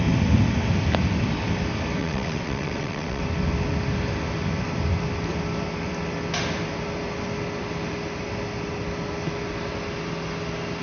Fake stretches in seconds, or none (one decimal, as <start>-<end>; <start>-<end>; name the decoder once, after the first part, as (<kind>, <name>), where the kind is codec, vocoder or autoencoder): 2.0-3.2 (vocoder, WaveNeXt)